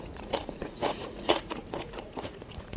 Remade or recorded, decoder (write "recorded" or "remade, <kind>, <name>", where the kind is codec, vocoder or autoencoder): remade, vocoder, Vocos